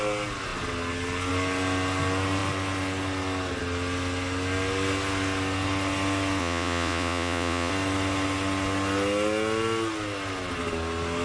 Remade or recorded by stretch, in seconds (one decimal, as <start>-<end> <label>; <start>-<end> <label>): 0.0-6.4 recorded; 6.4-7.7 remade; 7.7-11.2 recorded